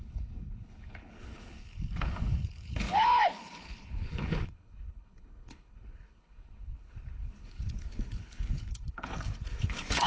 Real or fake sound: fake